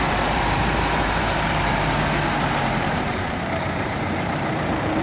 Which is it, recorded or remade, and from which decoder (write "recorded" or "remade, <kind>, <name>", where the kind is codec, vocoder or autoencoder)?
remade, vocoder, BigVGAN v2